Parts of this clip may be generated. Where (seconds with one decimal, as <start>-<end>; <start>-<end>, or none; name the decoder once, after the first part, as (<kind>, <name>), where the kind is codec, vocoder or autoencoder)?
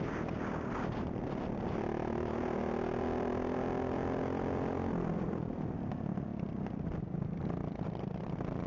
none